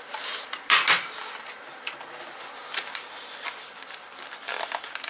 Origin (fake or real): real